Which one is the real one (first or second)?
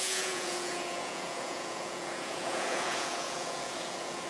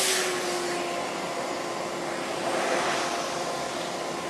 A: second